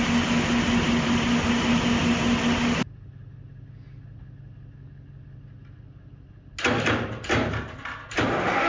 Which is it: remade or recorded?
recorded